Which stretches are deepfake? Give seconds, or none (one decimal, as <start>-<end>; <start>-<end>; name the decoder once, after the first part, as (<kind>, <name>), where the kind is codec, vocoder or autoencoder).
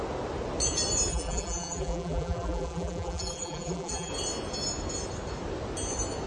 1.1-4.1 (vocoder, BigVGAN v2)